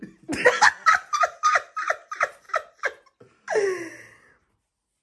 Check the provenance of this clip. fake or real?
real